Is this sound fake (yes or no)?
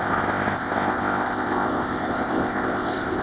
yes